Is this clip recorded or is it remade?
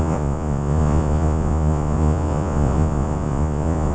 remade